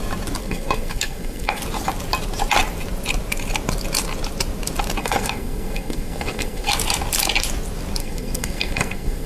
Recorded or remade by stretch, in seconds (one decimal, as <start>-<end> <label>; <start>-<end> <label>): 0.0-0.4 recorded; 0.4-1.6 remade; 1.6-5.0 recorded; 5.0-6.7 remade; 6.7-8.0 recorded; 8.0-9.3 remade